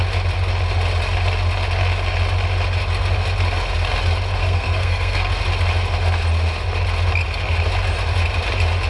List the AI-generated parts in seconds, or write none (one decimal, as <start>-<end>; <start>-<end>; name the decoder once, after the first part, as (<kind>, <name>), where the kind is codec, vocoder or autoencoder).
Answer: 4.4-5.3 (codec, SNAC)